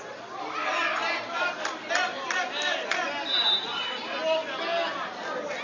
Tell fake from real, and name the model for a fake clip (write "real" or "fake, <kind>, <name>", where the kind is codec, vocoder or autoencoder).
real